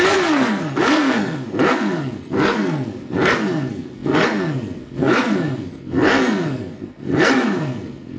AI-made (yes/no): yes